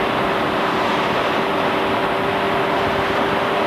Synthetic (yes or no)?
no